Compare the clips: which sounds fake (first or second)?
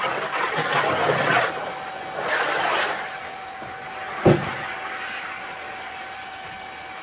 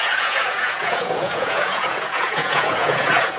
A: second